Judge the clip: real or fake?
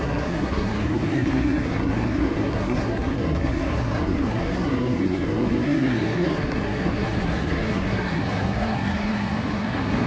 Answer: fake